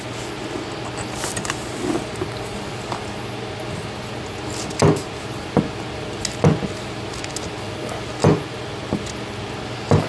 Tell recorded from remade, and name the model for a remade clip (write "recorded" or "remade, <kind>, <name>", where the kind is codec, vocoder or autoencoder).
recorded